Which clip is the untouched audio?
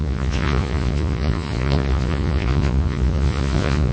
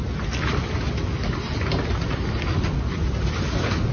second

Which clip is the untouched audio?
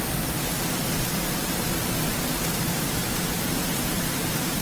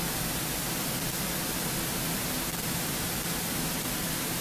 second